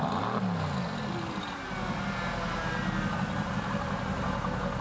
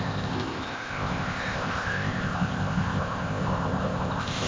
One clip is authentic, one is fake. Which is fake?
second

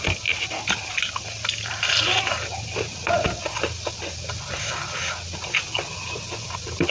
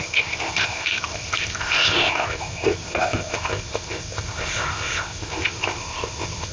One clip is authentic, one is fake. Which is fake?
second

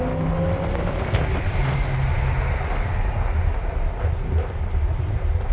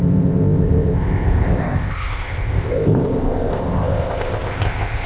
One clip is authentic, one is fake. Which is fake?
second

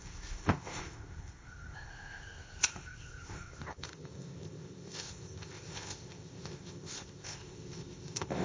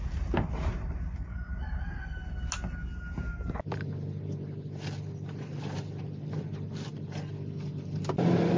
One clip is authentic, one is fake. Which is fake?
first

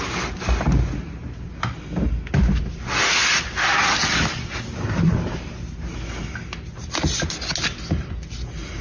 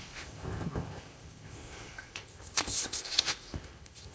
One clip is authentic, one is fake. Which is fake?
second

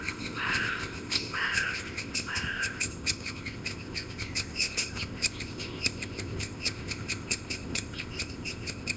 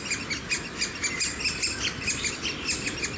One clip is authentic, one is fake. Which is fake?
first